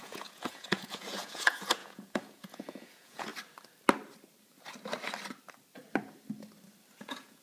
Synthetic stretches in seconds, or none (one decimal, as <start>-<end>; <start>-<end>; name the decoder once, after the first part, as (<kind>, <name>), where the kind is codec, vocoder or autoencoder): 0.0-3.3 (vocoder, Vocos); 7.0-7.4